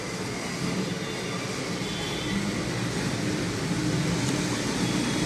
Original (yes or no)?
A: yes